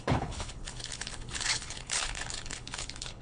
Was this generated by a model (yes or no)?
yes